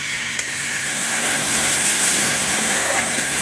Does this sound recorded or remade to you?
remade